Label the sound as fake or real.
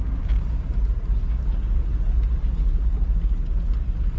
real